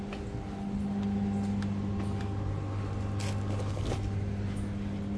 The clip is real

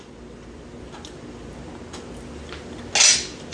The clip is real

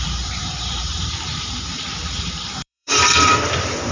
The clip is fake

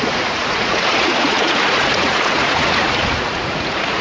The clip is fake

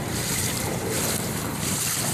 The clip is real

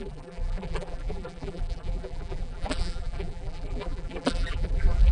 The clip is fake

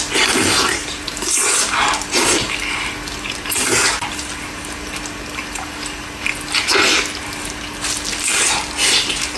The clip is real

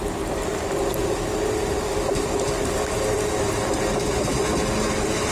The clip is real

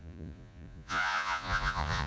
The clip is fake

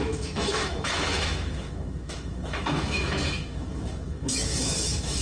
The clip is fake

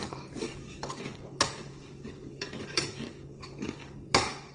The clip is fake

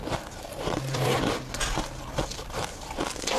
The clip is fake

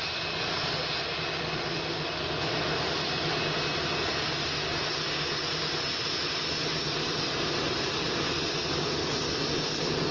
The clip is real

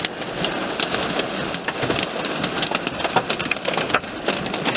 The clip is real